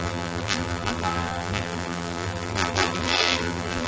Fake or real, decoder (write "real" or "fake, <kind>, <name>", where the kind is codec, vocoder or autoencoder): fake, vocoder, BigVGAN v2